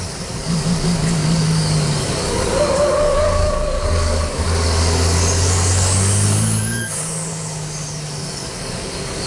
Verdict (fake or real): fake